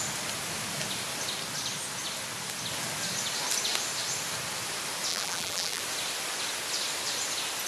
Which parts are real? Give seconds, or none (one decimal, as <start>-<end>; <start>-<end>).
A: 0.0-5.1; 5.8-7.7